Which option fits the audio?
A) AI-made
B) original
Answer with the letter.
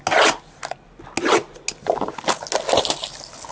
B